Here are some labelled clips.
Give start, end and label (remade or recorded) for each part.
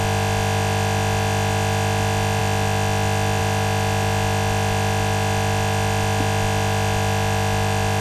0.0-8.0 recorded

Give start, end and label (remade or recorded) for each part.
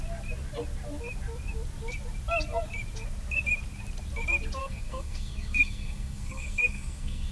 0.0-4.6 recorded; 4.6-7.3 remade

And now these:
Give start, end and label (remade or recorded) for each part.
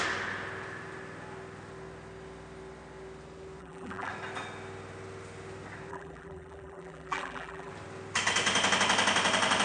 0.0-3.6 recorded; 3.6-4.1 remade; 4.1-5.9 recorded; 5.9-7.7 remade; 7.7-9.6 recorded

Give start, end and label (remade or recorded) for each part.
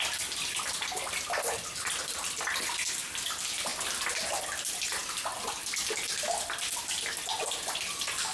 0.0-8.3 recorded